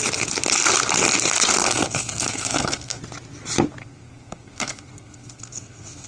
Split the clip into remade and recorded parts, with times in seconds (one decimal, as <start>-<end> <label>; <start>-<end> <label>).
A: 0.0-1.6 recorded; 1.6-3.0 remade; 3.0-3.8 recorded; 3.8-6.1 remade